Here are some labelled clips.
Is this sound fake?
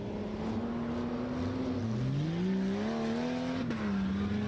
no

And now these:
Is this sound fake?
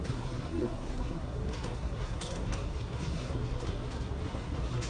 yes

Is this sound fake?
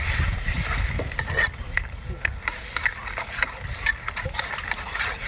no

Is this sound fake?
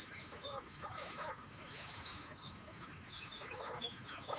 yes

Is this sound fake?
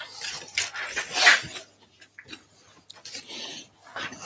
no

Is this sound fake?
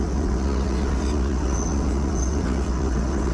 yes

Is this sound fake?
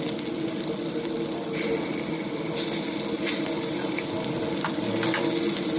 no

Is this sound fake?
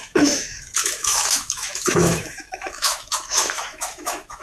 yes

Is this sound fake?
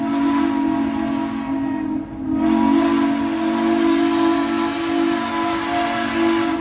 no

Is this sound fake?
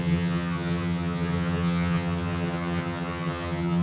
yes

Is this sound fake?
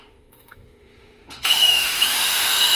yes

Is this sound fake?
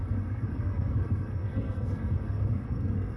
yes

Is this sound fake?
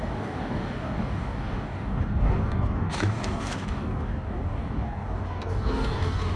yes